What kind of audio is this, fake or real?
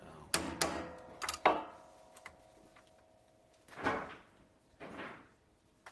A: real